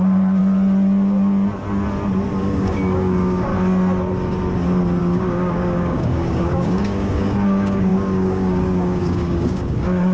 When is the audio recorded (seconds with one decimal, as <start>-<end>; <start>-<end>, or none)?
0.4-2.4; 3.5-5.0